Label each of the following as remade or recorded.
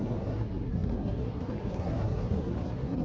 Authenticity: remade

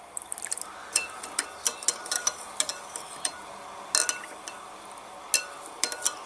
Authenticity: recorded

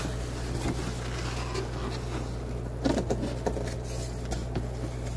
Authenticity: recorded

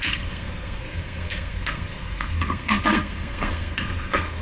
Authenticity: remade